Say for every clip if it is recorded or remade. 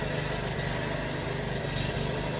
recorded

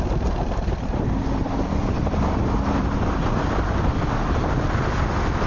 recorded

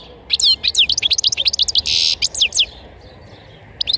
recorded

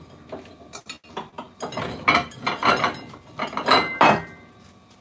recorded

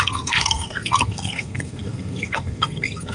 remade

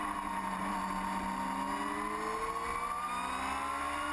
recorded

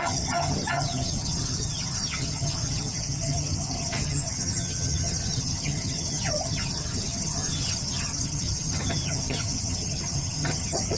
remade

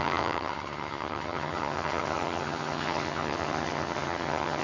remade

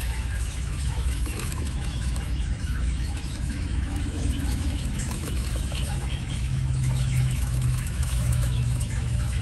remade